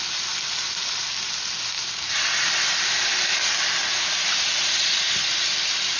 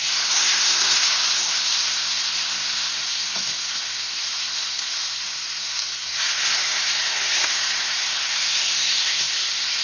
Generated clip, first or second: second